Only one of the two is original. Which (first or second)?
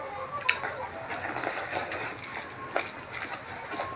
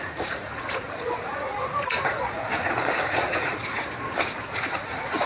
first